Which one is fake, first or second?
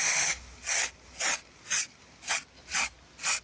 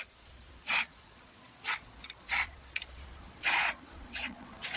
second